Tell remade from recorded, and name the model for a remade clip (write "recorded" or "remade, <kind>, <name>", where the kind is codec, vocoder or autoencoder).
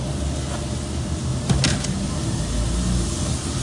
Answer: recorded